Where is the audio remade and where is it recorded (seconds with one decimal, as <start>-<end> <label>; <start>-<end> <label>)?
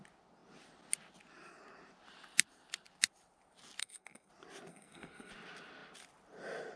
0.0-3.8 recorded; 3.8-4.3 remade; 4.3-4.7 recorded; 4.7-5.3 remade; 5.3-6.8 recorded